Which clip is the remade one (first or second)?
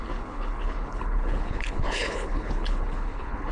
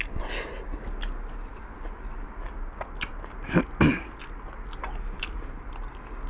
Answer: first